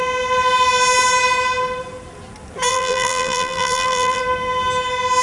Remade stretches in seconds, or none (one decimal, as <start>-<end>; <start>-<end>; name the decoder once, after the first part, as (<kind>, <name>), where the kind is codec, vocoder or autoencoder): 2.7-4.2 (vocoder, BigVGAN v2)